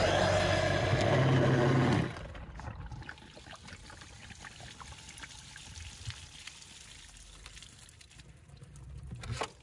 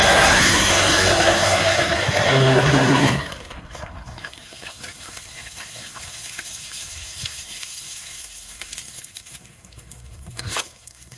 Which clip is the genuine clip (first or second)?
first